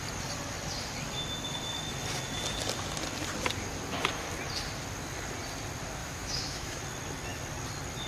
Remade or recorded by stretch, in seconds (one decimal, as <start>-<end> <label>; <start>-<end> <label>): 0.0-6.0 recorded; 6.0-6.8 remade; 6.8-8.1 recorded